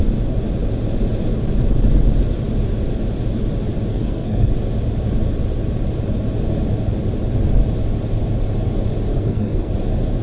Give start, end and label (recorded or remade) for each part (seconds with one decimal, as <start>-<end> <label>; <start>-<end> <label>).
0.0-3.9 recorded; 3.9-4.5 remade; 4.5-9.1 recorded; 9.1-9.7 remade; 9.7-10.2 recorded